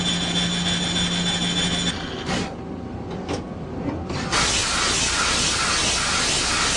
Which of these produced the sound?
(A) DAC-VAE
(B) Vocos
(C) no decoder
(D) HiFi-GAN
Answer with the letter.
C